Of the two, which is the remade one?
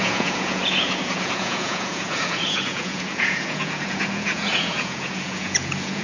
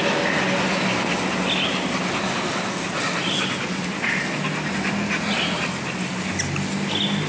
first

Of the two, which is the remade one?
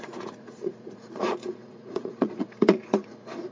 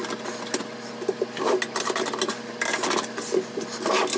first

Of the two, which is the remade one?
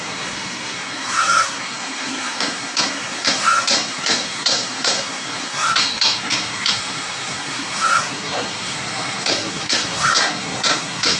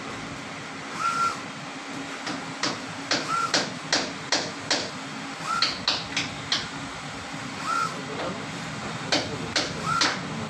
first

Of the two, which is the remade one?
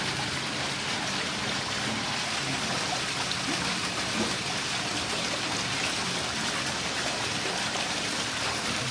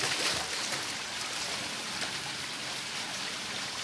second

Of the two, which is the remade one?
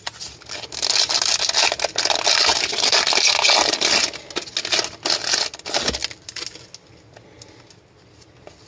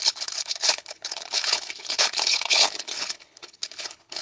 second